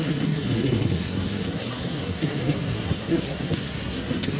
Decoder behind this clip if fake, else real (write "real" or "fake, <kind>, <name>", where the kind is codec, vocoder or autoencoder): fake, codec, SNAC